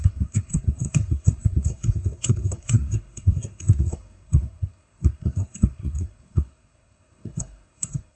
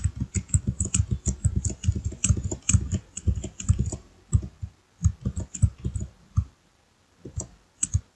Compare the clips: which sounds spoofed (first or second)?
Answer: first